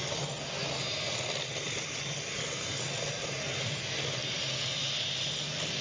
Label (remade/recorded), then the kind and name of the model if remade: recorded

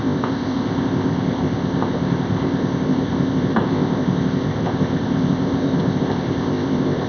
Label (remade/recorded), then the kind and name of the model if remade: remade, codec, ZipCodec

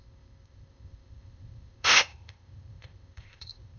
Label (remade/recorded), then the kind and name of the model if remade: remade, codec, ZipCodec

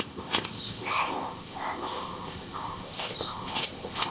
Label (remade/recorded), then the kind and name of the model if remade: remade, codec, ZipCodec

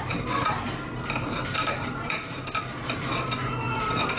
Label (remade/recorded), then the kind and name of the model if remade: recorded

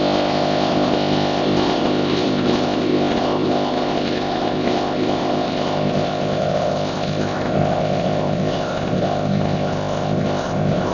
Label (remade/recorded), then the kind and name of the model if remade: remade, codec, ZipCodec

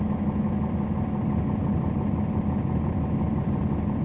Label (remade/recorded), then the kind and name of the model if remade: recorded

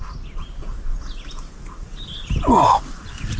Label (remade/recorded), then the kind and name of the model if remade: recorded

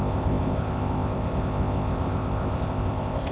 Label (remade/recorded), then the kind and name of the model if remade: remade, codec, ZipCodec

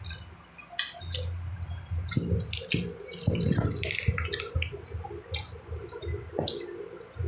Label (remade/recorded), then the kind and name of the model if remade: recorded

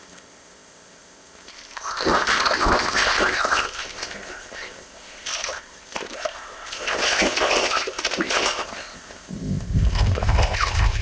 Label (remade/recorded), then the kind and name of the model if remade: remade, codec, ZipCodec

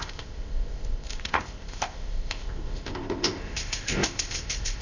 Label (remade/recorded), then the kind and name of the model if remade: remade, codec, ZipCodec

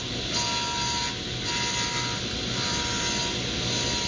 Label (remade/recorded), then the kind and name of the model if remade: recorded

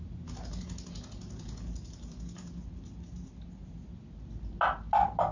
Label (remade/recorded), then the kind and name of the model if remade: recorded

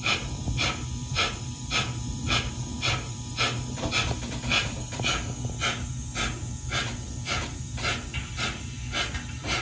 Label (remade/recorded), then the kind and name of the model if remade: recorded